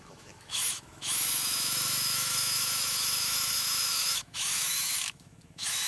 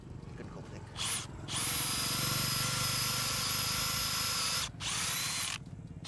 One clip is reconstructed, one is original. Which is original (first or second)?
second